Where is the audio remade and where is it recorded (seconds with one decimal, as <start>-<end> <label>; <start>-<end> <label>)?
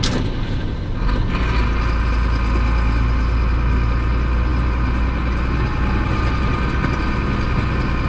0.0-8.1 recorded